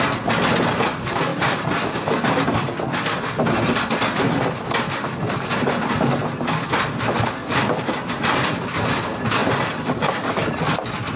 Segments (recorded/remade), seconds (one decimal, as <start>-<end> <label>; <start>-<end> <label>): 0.0-7.4 recorded; 7.4-8.8 remade; 8.8-9.4 recorded; 9.4-10.2 remade; 10.2-11.2 recorded